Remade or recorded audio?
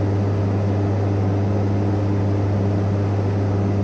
recorded